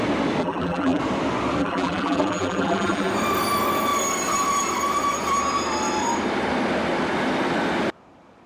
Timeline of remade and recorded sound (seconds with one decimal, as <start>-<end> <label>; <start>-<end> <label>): 0.0-0.4 recorded; 0.4-1.0 remade; 1.0-1.6 recorded; 1.6-3.1 remade; 3.1-8.5 recorded